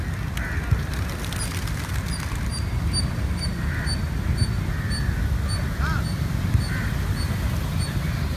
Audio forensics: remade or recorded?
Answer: recorded